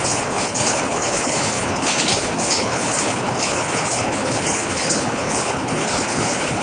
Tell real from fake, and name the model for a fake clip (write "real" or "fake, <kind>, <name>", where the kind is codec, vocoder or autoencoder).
fake, codec, HILCodec